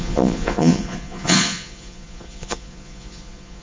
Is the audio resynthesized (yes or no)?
yes